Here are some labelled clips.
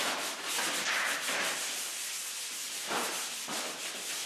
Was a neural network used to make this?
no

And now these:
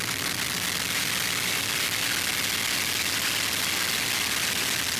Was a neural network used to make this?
no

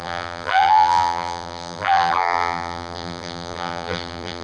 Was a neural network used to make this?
yes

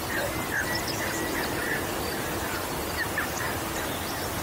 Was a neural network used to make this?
no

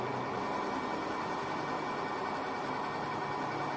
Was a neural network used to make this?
no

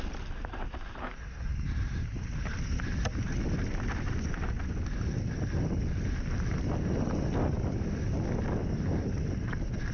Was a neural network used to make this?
no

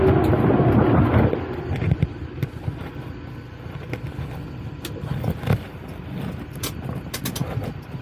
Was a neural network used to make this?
no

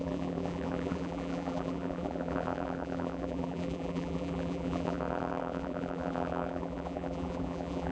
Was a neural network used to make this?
yes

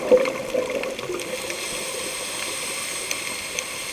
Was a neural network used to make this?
no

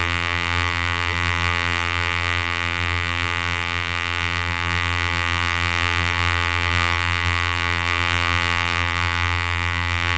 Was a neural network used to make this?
yes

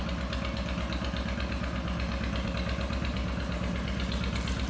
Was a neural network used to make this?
no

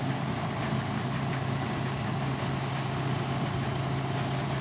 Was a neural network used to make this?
no